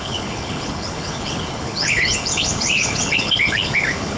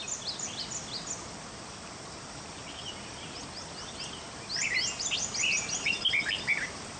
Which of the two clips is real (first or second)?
second